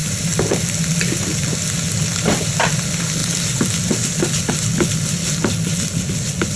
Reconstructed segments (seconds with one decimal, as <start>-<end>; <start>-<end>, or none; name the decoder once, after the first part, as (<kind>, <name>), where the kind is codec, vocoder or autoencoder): none